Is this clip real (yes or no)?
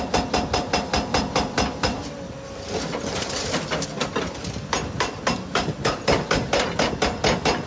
yes